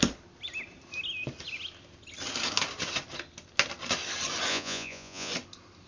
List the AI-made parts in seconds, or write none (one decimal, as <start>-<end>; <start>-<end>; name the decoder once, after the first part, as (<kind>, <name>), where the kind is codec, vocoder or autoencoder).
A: 4.5-5.3 (vocoder, Vocos)

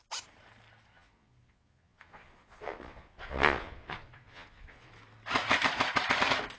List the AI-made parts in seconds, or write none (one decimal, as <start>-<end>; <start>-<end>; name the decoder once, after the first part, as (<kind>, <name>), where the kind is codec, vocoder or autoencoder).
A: 0.9-4.9 (vocoder, Vocos)